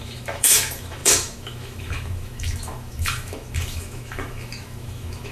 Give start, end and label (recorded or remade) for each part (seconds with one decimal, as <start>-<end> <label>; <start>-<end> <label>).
0.0-5.3 remade